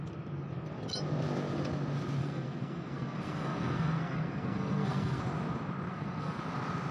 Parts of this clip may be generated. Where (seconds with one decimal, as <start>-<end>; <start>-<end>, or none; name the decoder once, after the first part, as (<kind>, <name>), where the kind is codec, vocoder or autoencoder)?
2.2-5.2 (codec, SNAC); 5.9-6.4